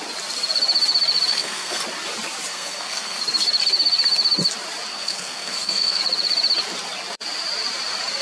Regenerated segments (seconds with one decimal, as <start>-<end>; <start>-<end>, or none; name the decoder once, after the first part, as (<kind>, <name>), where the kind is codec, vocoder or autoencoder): 1.3-1.8 (codec, SNAC); 2.5-3.2; 4.9-6.0